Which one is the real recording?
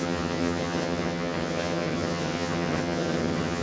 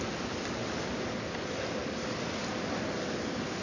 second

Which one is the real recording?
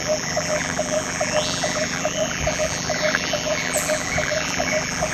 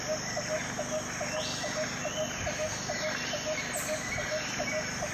second